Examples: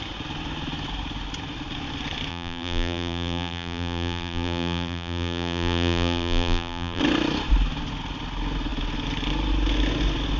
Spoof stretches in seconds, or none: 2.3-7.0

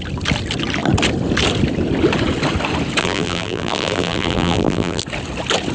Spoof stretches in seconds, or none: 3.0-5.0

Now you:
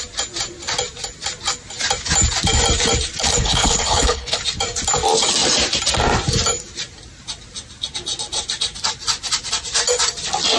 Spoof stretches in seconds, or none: 3.2-4.4

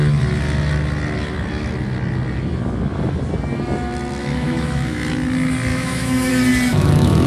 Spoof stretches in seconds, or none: 4.2-5.1; 5.7-6.3; 6.7-7.3